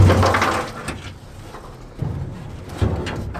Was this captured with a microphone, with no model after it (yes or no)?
yes